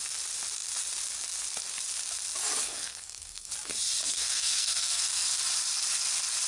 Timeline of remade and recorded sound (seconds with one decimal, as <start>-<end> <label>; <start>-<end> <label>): 0.0-2.7 recorded; 2.7-3.5 remade; 3.5-4.0 recorded; 4.0-5.4 remade; 5.4-6.5 recorded